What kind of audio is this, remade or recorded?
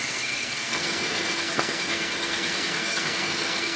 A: remade